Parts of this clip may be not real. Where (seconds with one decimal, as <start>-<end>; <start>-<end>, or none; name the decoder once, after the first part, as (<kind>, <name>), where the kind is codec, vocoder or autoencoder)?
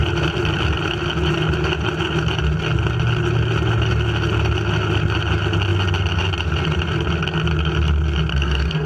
8.3-8.9 (codec, SNAC)